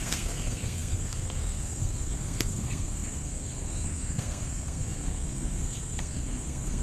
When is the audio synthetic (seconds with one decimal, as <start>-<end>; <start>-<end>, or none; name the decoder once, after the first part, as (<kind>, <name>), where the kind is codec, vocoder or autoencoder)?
0.0-6.8 (codec, SNAC)

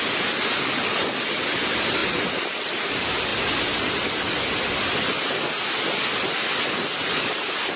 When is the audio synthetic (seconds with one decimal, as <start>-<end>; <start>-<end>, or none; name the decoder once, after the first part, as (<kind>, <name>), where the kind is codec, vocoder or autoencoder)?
none

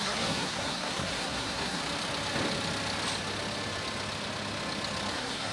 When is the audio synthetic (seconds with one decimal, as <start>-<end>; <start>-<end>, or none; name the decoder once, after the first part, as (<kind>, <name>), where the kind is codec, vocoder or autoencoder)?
0.0-1.8 (codec, SNAC); 5.1-5.5

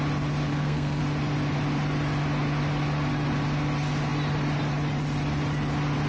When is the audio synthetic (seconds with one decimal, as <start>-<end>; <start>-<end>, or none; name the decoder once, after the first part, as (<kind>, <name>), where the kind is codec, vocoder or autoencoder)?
0.5-1.0 (codec, SNAC)

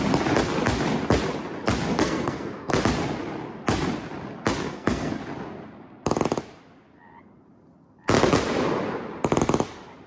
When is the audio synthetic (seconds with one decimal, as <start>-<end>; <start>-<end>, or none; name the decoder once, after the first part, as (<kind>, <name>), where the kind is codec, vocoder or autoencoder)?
1.9-2.7 (codec, SNAC); 4.7-5.2